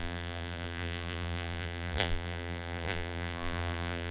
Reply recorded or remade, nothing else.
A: remade